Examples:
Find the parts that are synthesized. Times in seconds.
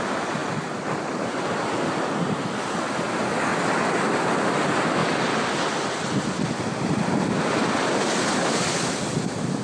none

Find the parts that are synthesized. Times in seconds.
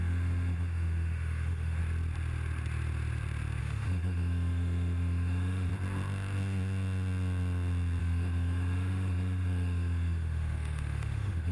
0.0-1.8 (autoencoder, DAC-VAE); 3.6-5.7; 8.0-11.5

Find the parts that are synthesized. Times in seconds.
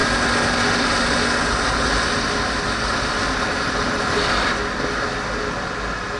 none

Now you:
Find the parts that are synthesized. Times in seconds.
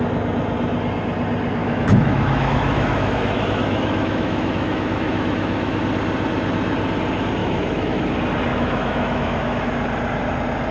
1.6-5.8 (autoencoder, DAC-VAE); 7.4-8.0; 8.5-9.7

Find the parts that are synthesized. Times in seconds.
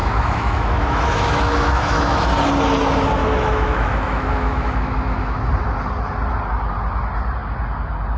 0.0-2.3 (autoencoder, DAC-VAE); 3.2-5.4